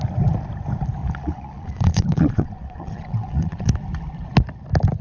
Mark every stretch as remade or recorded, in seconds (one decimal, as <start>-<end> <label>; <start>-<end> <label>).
0.0-1.0 recorded; 1.0-3.7 remade; 3.7-5.0 recorded